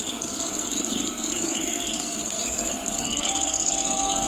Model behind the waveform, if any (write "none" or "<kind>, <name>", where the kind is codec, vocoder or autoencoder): codec, SNAC